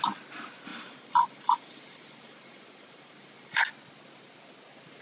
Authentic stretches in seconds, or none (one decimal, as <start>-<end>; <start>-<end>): 0.0-0.7; 3.7-5.0